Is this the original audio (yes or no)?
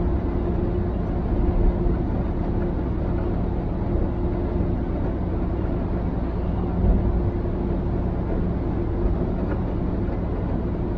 yes